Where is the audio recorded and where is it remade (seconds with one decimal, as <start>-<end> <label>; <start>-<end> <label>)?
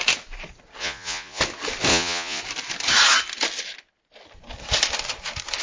0.0-0.8 recorded; 0.8-1.4 remade; 1.4-1.9 recorded; 1.9-2.4 remade; 2.4-5.6 recorded